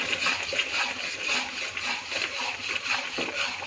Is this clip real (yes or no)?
yes